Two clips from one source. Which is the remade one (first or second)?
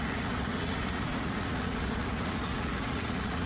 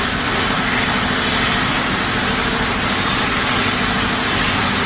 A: first